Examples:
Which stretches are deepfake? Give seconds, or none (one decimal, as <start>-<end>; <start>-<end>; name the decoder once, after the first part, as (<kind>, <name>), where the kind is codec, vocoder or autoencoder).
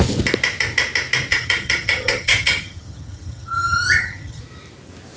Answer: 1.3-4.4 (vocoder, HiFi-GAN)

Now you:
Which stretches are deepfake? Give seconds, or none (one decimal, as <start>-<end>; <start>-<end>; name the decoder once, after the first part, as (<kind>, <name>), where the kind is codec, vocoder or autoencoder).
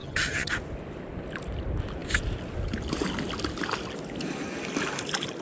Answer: 0.0-0.5 (vocoder, HiFi-GAN)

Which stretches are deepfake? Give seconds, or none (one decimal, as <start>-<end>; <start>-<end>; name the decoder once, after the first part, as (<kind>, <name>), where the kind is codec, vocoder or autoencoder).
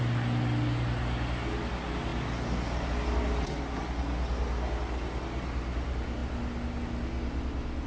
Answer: none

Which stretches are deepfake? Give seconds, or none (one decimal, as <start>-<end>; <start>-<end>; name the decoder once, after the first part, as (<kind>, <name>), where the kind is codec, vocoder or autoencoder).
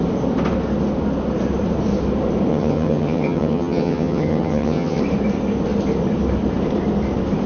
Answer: 2.5-5.0 (vocoder, HiFi-GAN)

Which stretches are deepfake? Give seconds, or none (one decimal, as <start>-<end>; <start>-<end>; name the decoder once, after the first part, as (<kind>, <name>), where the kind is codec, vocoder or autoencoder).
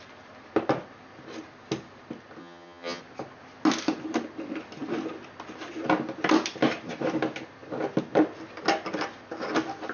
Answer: 2.4-3.0 (vocoder, HiFi-GAN)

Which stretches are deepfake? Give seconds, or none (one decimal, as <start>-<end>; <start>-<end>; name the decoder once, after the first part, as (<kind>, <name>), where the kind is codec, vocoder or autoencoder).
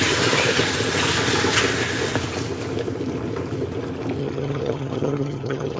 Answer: 4.2-5.8 (vocoder, HiFi-GAN)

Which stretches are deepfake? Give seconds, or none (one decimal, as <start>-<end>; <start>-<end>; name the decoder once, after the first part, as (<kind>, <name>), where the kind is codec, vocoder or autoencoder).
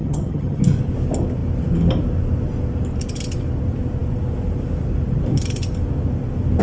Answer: 0.0-0.6 (vocoder, HiFi-GAN)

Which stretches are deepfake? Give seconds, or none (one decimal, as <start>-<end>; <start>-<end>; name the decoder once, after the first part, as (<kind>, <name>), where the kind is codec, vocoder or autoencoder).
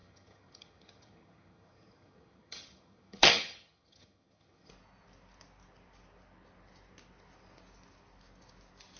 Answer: 0.0-4.7 (vocoder, HiFi-GAN)